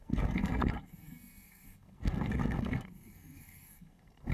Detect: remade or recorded remade